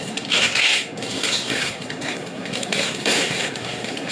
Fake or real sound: fake